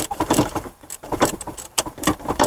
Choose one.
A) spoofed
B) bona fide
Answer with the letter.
A